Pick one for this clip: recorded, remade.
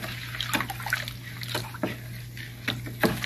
recorded